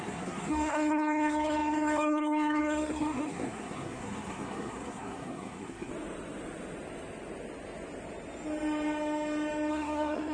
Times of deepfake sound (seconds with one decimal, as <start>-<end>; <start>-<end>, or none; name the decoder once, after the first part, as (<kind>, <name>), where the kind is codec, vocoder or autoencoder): 0.0-5.9 (codec, SNAC); 9.7-10.3